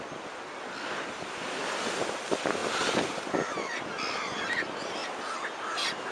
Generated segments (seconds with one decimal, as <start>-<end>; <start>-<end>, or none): 2.6-3.2